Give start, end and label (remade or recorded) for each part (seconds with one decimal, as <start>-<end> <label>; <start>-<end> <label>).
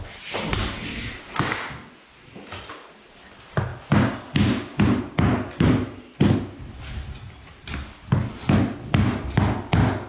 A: 0.0-10.1 recorded